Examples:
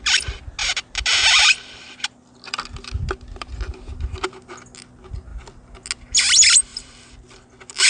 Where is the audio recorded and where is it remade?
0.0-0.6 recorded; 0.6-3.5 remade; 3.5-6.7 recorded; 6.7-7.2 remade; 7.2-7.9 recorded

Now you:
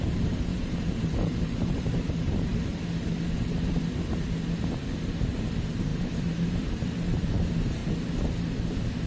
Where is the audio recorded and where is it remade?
0.0-2.5 remade; 2.5-5.3 recorded; 5.3-7.8 remade; 7.8-9.1 recorded

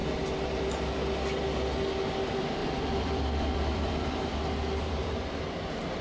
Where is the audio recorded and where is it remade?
0.0-2.2 recorded; 2.2-6.0 remade

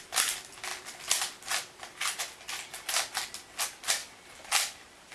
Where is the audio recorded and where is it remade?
0.0-0.7 recorded; 0.7-2.2 remade; 2.2-4.0 recorded; 4.0-5.1 remade

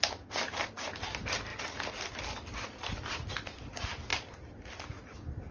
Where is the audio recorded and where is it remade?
0.0-1.5 remade; 1.5-3.6 recorded; 3.6-5.5 remade